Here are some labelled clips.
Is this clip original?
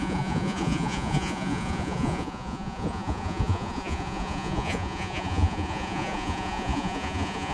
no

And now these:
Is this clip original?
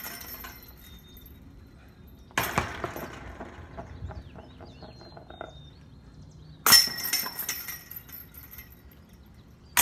yes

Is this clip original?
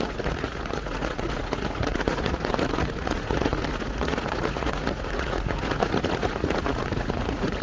no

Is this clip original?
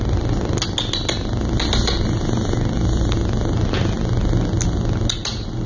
yes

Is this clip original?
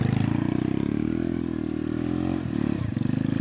yes